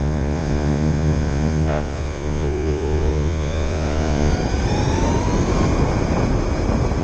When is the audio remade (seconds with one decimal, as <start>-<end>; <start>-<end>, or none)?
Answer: 0.0-4.3